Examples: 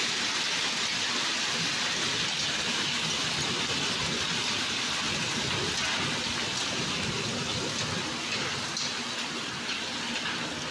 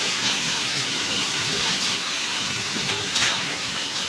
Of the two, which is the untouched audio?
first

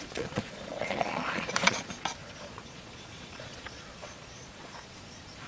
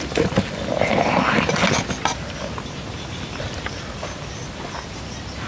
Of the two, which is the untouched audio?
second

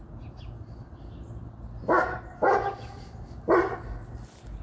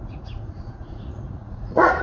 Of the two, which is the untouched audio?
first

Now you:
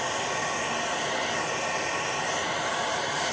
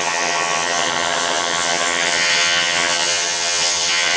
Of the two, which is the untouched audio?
first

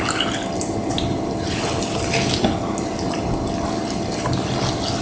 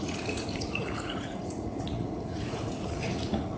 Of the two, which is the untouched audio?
first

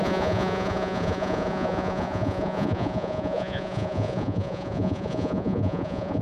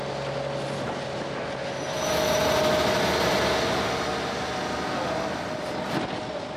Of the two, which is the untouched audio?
second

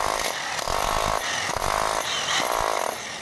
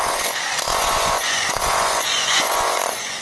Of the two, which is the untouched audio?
first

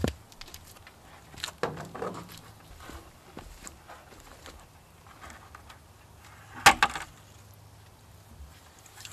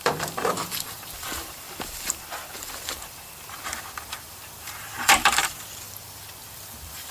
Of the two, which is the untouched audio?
first